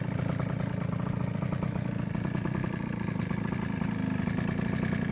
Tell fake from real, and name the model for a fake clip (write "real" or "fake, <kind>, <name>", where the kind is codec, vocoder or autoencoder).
real